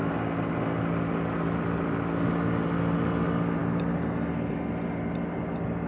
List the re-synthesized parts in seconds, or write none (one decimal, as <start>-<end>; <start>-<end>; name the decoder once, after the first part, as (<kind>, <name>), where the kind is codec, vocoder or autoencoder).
none